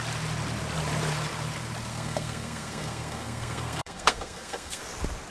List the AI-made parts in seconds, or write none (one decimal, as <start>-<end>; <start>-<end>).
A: 1.9-4.8